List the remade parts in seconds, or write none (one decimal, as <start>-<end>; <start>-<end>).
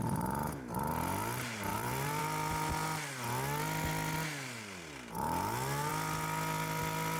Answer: 1.7-2.2